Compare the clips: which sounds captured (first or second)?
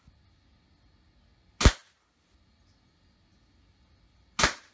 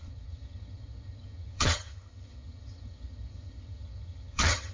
first